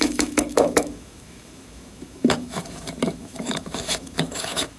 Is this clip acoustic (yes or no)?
no